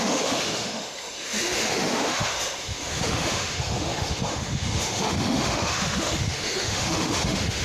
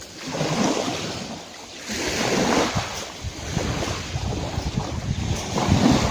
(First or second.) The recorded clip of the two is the second